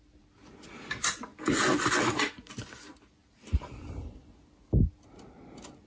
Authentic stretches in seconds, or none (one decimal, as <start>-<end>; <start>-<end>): 0.0-5.9